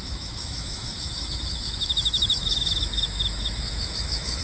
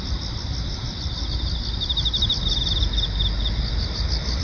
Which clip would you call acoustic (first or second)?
second